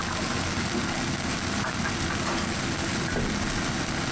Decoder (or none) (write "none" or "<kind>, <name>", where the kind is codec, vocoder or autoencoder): none